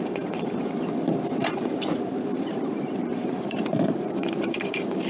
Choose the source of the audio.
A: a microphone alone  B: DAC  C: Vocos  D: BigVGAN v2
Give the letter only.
D